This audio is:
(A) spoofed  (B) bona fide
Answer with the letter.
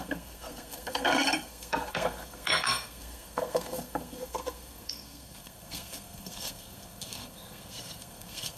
A